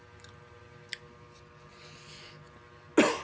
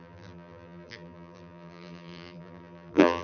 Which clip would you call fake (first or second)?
second